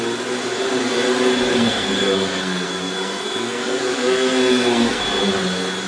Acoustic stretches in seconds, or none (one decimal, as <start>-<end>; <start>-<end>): 0.0-1.5; 5.0-5.9